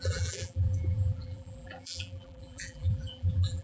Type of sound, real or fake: fake